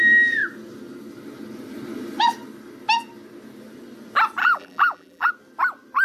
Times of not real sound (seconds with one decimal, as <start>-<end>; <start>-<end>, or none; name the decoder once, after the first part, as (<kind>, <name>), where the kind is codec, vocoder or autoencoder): 4.4-5.3 (vocoder, BigVGAN v2)